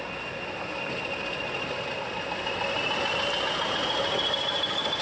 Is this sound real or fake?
real